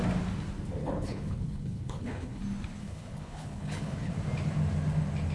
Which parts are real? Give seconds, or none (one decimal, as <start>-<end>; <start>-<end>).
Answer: 0.0-0.8; 2.4-2.8; 4.1-5.3